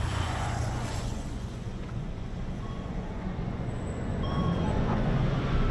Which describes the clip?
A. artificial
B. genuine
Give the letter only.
A